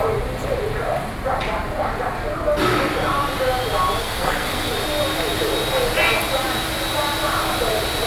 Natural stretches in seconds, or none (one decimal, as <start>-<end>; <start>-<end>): 0.0-4.0; 4.7-8.1